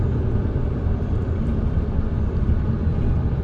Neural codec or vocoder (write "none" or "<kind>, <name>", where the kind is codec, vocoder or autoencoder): vocoder, BigVGAN v2